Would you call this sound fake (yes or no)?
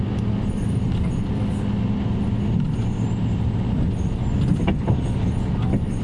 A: no